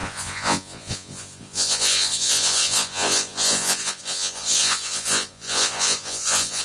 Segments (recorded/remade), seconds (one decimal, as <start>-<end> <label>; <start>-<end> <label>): 0.0-6.6 remade